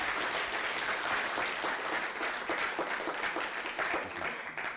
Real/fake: real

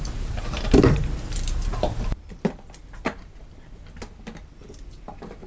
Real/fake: real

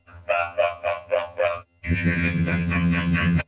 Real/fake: fake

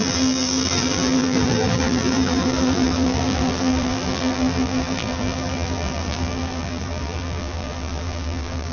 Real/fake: fake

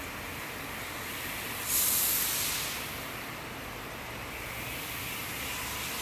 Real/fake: real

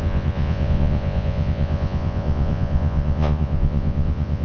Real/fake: fake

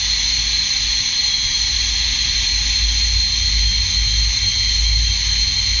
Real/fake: real